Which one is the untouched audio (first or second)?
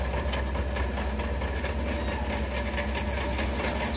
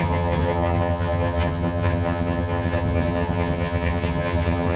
first